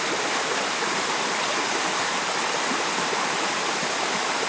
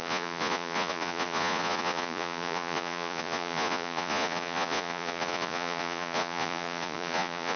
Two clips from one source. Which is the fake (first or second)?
second